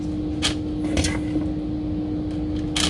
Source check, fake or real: real